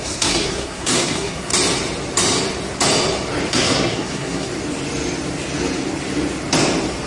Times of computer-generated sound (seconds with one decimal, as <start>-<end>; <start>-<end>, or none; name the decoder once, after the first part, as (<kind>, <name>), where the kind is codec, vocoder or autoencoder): 0.0-1.5 (codec, SNAC); 3.5-4.5